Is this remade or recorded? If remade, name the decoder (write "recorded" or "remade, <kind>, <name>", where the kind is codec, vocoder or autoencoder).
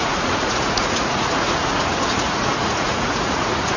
remade, vocoder, Vocos